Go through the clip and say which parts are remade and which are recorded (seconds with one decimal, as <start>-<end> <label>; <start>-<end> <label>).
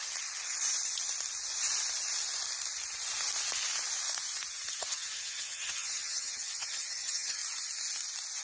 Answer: 0.0-4.8 recorded; 4.8-7.4 remade; 7.4-8.4 recorded